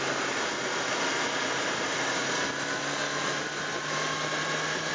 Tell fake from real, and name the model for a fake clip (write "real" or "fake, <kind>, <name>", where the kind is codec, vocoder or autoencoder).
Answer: real